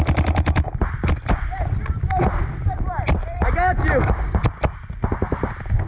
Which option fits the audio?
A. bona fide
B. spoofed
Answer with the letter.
A